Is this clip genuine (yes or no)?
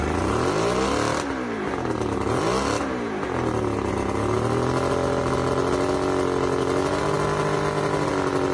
yes